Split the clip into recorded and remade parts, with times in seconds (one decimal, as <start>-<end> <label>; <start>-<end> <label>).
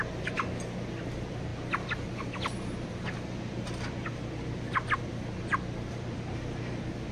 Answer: 0.0-7.1 recorded